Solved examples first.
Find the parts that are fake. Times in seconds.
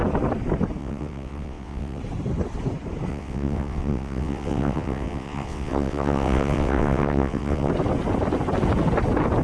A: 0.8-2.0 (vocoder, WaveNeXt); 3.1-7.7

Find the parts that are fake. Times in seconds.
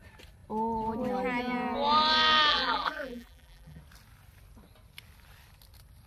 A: 2.5-3.8 (vocoder, BigVGAN v2)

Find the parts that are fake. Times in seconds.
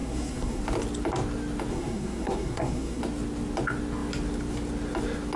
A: 0.0-0.6 (codec, SNAC); 1.7-3.0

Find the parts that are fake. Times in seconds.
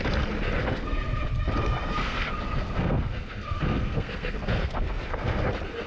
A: 0.6-1.2 (codec, SNAC); 2.0-5.5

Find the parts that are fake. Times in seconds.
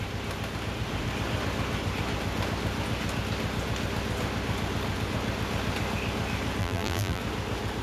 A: 6.6-7.2 (vocoder, BigVGAN v2)